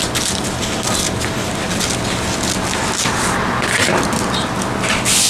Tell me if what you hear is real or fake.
real